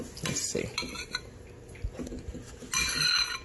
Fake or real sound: real